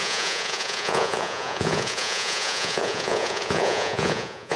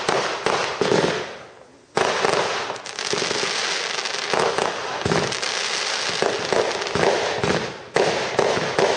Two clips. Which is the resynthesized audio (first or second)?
first